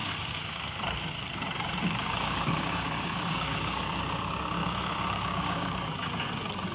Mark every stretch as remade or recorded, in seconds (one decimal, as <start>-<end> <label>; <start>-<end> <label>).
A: 0.0-4.0 remade; 4.0-4.6 recorded; 4.6-5.9 remade; 5.9-6.7 recorded